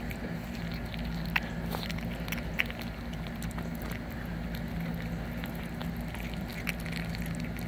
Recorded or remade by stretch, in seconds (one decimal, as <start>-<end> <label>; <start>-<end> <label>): 0.0-7.7 recorded